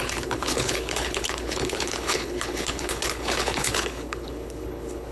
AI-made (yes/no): yes